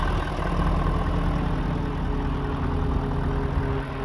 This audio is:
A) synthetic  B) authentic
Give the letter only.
B